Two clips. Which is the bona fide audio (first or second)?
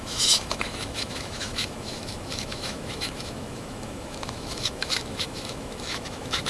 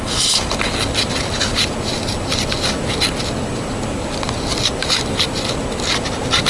second